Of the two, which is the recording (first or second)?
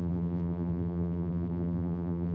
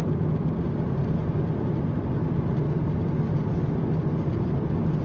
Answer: second